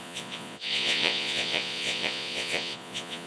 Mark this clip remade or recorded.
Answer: remade